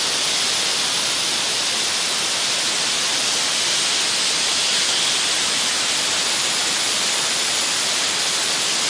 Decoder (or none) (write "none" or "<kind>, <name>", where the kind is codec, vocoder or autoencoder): none